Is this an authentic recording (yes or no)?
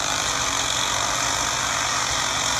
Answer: yes